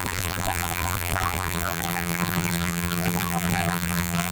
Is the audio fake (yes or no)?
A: yes